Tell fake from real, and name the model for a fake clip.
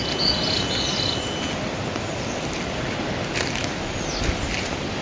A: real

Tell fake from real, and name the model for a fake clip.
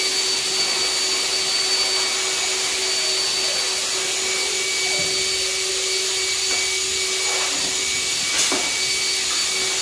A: real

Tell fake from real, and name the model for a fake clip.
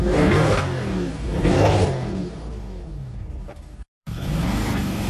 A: fake, codec, DAC